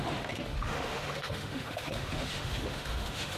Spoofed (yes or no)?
yes